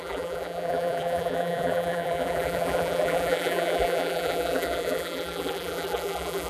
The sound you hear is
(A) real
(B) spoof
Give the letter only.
B